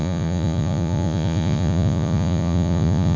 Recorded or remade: remade